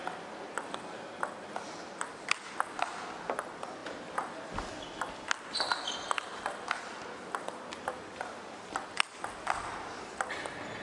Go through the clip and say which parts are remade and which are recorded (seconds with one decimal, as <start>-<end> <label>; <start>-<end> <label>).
0.0-10.8 recorded